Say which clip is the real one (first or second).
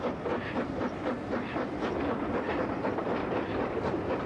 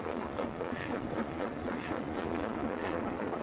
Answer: first